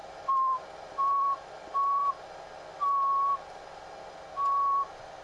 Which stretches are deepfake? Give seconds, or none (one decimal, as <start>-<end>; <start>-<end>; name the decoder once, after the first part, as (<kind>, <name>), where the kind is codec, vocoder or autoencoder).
0.0-2.1 (vocoder, BigVGAN v2)